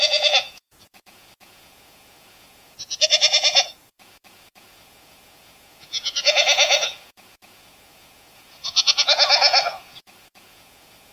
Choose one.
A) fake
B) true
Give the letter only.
A